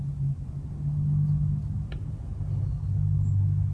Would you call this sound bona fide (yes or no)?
yes